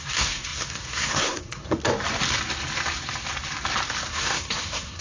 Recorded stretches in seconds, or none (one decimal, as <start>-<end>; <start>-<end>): 1.8-4.1